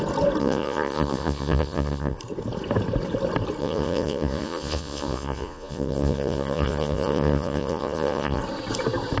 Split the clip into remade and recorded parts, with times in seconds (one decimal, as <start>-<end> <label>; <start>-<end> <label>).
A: 0.0-0.4 recorded; 0.4-2.2 remade; 2.2-3.6 recorded; 3.6-8.4 remade; 8.4-9.2 recorded